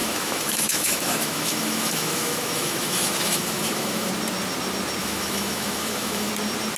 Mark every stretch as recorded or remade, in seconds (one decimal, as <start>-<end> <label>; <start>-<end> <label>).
0.0-4.1 remade; 4.1-5.0 recorded; 5.0-6.3 remade; 6.3-6.8 recorded